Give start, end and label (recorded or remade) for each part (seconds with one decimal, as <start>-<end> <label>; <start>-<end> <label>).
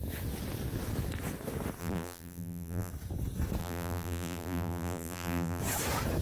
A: 0.0-1.8 recorded; 1.8-2.9 remade; 2.9-3.6 recorded; 3.6-5.6 remade; 5.6-6.2 recorded